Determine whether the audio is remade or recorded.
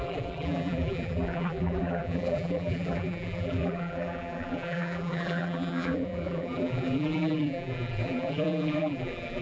remade